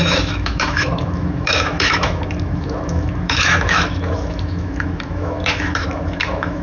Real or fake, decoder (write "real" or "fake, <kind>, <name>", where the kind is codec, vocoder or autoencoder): fake, autoencoder, DAC-VAE